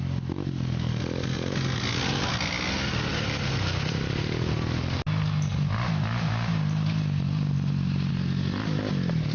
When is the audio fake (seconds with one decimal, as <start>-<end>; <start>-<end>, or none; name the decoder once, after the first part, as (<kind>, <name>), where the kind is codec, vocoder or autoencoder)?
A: none